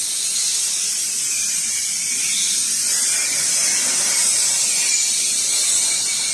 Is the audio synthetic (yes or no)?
no